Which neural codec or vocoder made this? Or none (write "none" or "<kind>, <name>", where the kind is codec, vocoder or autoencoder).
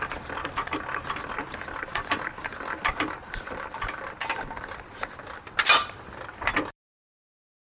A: none